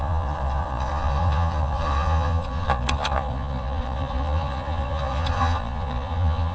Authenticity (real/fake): fake